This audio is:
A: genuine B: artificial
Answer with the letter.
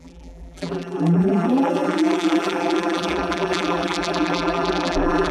B